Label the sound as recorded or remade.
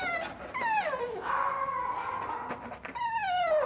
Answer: recorded